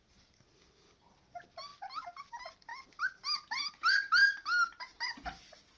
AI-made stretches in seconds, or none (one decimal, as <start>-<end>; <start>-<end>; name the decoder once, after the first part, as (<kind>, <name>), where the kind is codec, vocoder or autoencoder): none